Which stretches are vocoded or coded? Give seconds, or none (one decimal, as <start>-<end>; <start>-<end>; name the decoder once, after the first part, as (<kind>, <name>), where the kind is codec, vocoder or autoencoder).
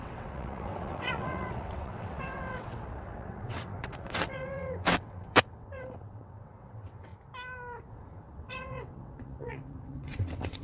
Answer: 0.0-7.1 (vocoder, WaveNeXt); 7.9-10.6